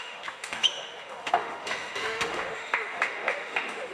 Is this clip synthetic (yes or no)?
yes